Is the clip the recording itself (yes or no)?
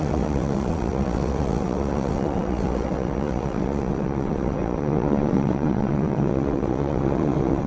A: no